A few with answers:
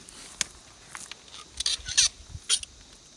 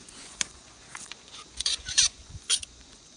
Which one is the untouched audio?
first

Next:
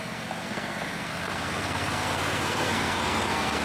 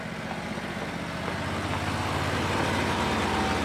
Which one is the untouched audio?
second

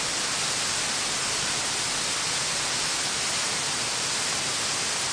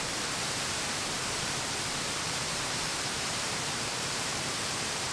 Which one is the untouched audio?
first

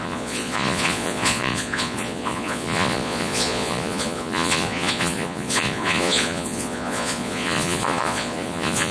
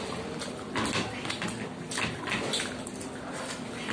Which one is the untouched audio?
second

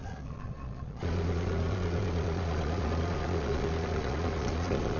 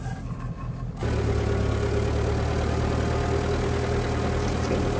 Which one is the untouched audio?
second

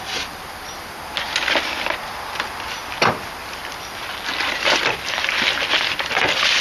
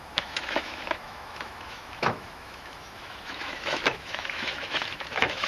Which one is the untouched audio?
first